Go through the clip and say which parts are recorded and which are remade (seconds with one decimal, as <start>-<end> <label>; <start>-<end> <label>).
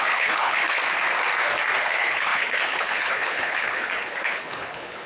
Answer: 0.0-0.8 remade; 0.8-1.8 recorded; 1.8-5.1 remade